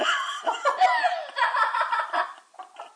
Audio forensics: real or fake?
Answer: real